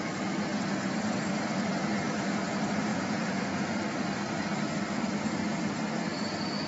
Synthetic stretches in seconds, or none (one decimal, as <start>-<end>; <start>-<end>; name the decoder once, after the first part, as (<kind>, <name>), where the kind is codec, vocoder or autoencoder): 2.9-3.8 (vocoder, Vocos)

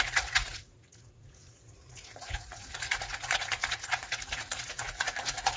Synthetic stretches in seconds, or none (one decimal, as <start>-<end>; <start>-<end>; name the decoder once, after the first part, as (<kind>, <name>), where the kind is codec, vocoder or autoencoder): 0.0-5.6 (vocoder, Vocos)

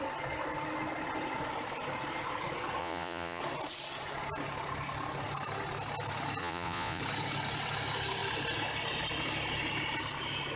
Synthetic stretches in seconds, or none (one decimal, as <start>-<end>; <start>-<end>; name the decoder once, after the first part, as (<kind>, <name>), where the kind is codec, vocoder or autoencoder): 2.8-3.4 (vocoder, Vocos); 6.4-7.0